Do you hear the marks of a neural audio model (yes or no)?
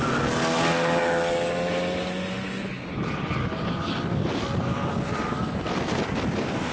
no